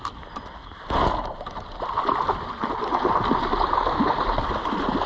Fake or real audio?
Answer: real